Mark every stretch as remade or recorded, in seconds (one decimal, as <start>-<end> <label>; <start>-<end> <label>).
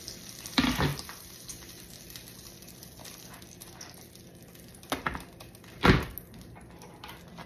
0.0-7.5 recorded